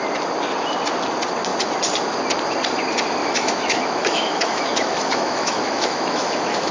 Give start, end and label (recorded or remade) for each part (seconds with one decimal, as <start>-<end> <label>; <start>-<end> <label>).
0.0-3.2 recorded; 3.2-6.7 remade